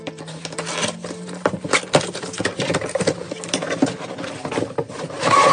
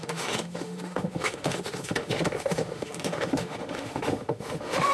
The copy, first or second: second